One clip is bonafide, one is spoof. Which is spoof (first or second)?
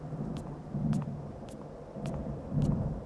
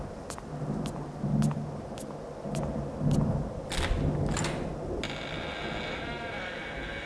first